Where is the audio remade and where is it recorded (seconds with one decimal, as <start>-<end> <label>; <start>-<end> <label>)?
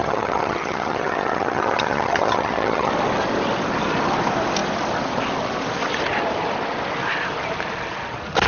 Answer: 0.0-2.9 remade; 2.9-8.5 recorded